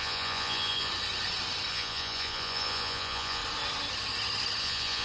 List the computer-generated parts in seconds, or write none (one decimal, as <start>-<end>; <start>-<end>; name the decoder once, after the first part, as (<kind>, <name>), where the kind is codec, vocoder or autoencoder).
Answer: 0.0-0.9 (vocoder, Vocos); 1.7-3.4; 4.6-5.0